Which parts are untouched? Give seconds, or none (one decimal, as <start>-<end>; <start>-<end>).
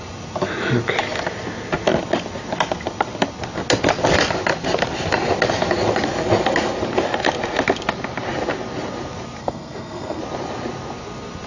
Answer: 0.0-9.4; 10.2-11.5